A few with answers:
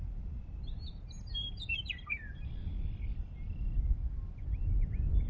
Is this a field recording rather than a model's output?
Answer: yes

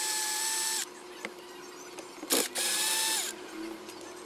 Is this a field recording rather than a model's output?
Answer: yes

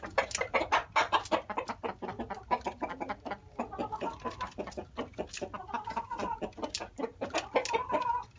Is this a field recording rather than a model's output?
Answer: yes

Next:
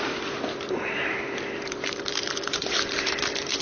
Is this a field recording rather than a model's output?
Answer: no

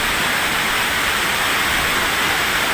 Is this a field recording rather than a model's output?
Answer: yes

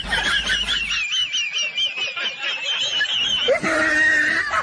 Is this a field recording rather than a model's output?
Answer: yes